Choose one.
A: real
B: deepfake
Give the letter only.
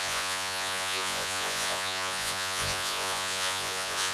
B